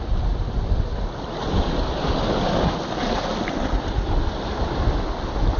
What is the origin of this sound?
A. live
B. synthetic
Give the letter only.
A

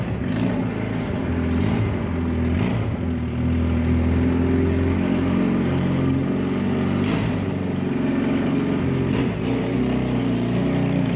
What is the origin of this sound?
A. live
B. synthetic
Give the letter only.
A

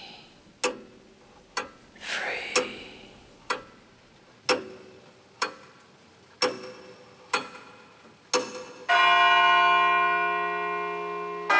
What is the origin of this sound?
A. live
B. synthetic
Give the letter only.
A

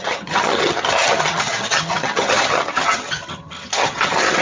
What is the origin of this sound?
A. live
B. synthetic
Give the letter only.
B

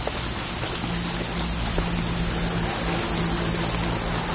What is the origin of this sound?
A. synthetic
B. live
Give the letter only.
B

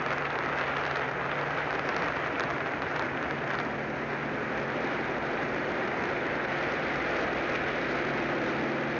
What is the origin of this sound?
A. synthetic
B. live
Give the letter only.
B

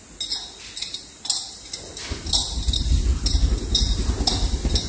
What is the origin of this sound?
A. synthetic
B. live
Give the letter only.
B